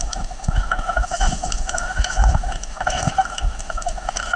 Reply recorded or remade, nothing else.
remade